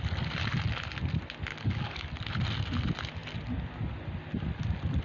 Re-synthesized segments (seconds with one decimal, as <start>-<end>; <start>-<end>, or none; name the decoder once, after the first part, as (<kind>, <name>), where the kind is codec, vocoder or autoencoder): 1.5-2.2 (codec, DAC)